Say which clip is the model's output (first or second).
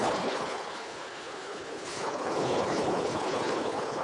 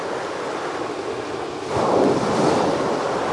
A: first